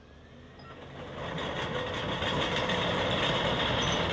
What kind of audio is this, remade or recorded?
recorded